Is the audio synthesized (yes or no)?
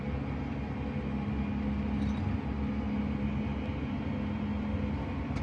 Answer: no